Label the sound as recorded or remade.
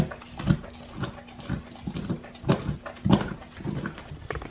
recorded